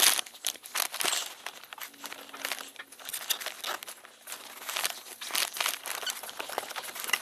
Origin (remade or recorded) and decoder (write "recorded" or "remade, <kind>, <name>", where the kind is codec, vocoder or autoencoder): recorded